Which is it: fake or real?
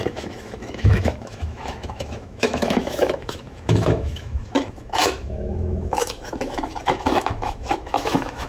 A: fake